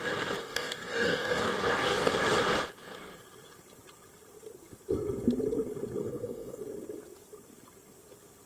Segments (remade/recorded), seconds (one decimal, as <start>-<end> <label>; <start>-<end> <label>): 0.0-0.5 recorded; 0.5-2.1 remade; 2.1-6.0 recorded; 6.0-6.6 remade; 6.6-8.5 recorded